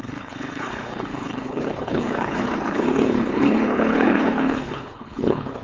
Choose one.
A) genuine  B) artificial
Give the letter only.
B